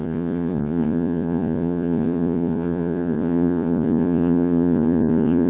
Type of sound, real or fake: fake